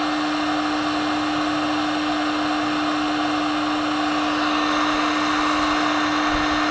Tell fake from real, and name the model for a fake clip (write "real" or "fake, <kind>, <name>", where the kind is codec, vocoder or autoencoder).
real